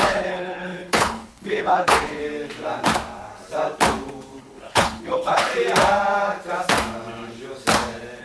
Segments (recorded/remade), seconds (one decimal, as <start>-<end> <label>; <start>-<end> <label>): 0.0-2.2 remade; 2.2-4.4 recorded; 4.4-5.5 remade; 5.5-8.2 recorded